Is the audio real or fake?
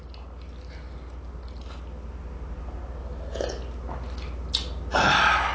real